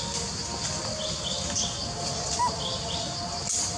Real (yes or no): yes